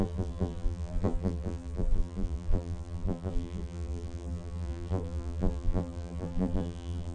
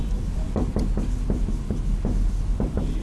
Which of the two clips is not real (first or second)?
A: first